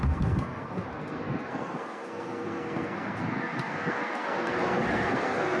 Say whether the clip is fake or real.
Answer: fake